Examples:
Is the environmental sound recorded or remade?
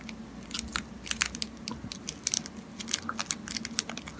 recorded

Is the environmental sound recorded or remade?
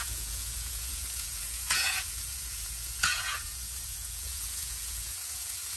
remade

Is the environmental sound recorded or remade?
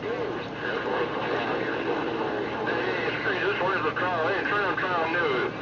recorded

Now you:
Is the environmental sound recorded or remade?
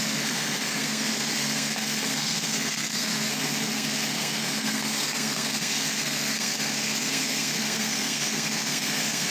remade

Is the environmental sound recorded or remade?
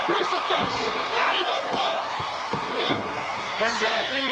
remade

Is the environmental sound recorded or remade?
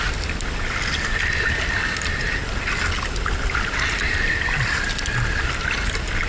recorded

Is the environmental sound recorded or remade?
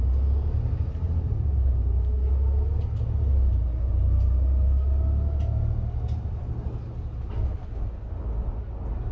recorded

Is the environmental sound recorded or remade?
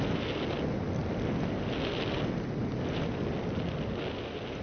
recorded